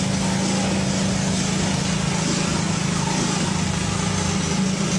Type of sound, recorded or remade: recorded